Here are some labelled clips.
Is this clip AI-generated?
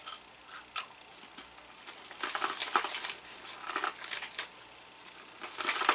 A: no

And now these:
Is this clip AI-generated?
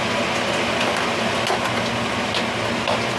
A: no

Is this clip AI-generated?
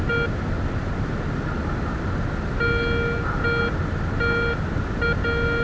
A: no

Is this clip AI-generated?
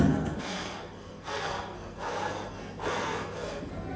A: yes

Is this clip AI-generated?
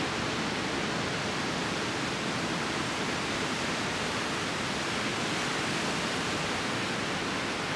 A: no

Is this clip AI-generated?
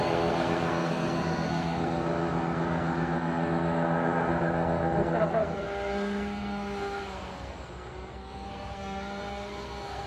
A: yes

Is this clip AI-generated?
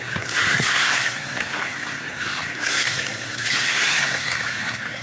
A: yes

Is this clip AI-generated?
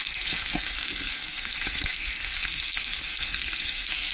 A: yes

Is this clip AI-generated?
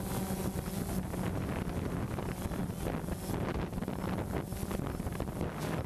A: no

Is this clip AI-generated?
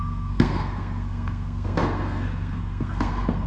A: yes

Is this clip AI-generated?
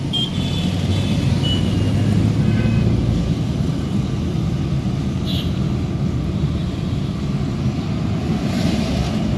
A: no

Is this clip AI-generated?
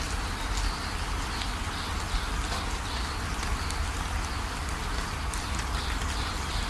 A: no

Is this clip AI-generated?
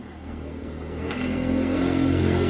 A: yes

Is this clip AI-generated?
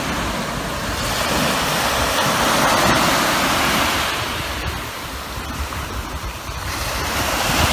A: no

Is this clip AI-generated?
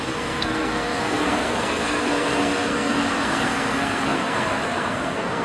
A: yes